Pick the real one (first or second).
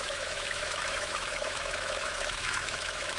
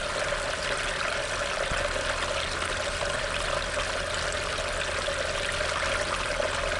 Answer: second